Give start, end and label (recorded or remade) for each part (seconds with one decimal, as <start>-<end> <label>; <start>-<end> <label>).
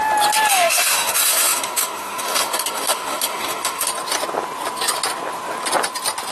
0.0-0.5 recorded; 0.5-3.9 remade; 3.9-6.3 recorded